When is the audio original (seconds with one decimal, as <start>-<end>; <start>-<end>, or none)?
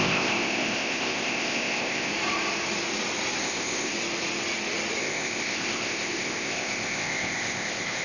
2.1-3.4; 3.9-5.0